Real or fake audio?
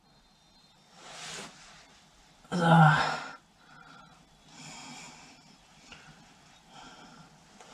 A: real